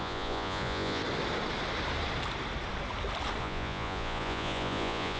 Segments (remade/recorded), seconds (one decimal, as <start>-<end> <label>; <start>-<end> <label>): 0.0-1.0 remade; 1.0-3.4 recorded; 3.4-5.2 remade